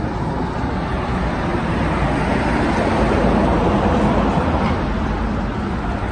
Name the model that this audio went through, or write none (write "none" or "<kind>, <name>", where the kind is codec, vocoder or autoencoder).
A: none